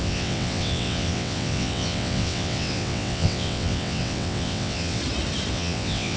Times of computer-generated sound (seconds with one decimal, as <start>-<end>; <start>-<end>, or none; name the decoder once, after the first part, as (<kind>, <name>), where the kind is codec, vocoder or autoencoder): 0.0-5.0 (vocoder, WaveNeXt); 5.5-6.2